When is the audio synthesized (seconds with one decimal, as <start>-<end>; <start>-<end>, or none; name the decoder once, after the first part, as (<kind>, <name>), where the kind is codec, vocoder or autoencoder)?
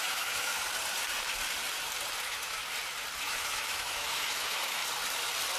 0.0-0.5 (autoencoder, DAC-VAE); 2.2-2.6; 3.2-4.8